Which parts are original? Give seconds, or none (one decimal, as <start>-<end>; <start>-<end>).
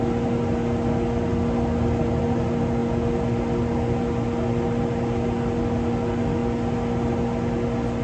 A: 0.0-8.0